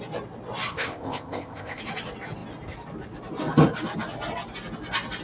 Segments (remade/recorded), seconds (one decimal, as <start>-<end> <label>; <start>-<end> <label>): 0.0-0.7 recorded; 0.7-1.8 remade; 1.8-5.2 recorded